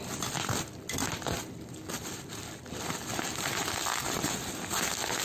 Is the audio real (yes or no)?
yes